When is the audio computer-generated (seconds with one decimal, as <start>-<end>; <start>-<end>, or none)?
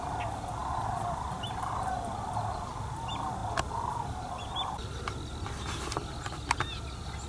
none